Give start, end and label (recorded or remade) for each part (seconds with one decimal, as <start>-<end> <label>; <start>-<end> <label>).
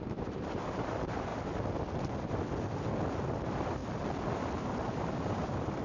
0.0-1.3 remade; 1.3-3.4 recorded; 3.4-3.8 remade; 3.8-4.8 recorded; 4.8-5.8 remade